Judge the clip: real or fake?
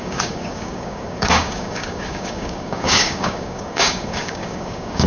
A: fake